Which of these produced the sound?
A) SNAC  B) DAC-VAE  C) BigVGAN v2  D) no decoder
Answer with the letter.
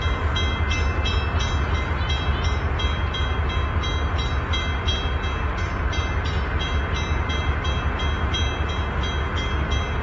D